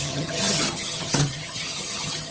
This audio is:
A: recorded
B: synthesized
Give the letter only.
B